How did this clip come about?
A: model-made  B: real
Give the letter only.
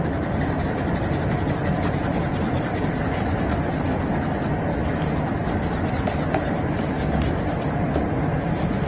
B